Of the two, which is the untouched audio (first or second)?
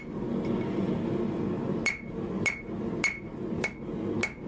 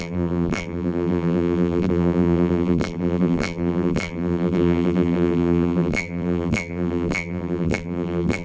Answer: first